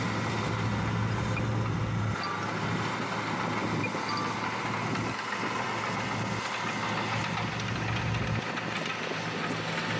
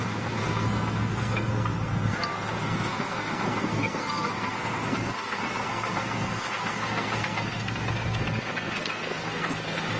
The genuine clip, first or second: first